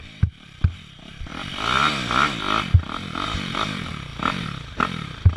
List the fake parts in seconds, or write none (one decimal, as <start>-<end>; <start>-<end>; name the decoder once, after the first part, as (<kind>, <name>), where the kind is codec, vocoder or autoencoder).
0.0-1.3 (vocoder, BigVGAN v2); 2.8-5.4